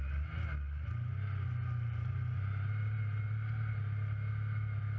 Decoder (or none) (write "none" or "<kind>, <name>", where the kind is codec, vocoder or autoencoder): none